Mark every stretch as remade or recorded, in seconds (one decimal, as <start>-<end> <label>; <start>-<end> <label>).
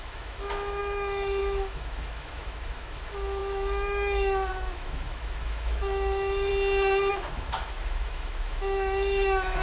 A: 0.0-6.5 remade; 6.5-7.1 recorded; 7.1-9.6 remade